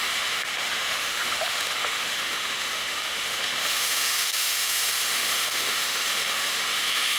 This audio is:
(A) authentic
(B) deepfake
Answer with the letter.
B